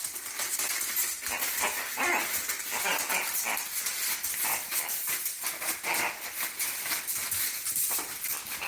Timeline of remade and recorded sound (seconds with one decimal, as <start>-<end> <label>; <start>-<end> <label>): 0.0-8.7 recorded